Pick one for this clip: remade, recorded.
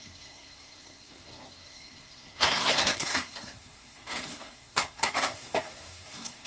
remade